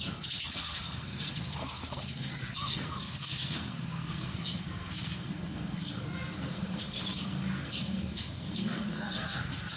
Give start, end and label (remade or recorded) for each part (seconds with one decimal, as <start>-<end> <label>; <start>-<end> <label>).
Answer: 0.0-9.8 remade